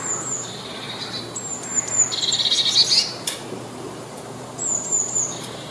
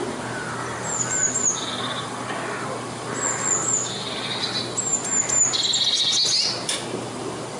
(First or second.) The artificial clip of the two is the first